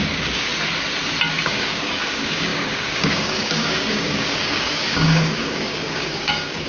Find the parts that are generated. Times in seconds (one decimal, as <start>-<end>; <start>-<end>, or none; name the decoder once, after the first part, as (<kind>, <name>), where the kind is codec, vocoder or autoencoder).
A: 0.0-0.5 (codec, DAC); 1.3-6.7